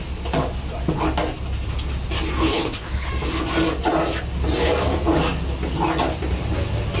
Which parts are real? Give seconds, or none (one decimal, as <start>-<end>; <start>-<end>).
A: 0.0-2.4; 3.1-7.0